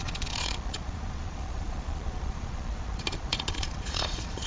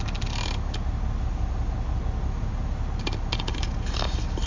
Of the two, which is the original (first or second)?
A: second